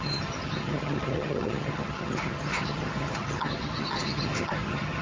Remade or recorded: remade